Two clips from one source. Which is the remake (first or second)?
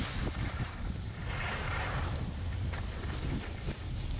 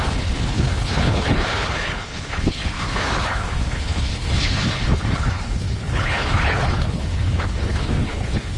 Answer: second